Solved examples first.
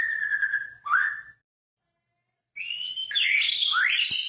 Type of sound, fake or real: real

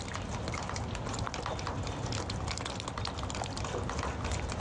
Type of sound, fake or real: real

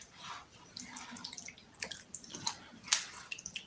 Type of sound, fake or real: real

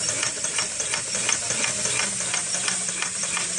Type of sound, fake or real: real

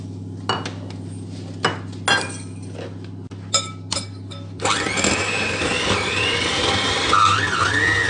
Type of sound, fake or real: real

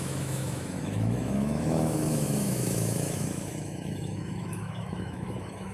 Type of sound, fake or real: fake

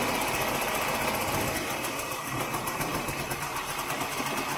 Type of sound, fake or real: real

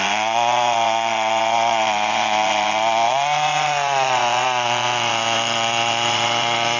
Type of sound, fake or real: fake